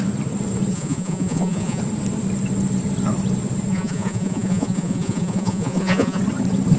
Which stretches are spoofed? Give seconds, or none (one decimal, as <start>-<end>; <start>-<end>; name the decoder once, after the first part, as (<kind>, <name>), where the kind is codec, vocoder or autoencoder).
0.7-1.8 (vocoder, Vocos); 3.7-6.2